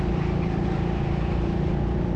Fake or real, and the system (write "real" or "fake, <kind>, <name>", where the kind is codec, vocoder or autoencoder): real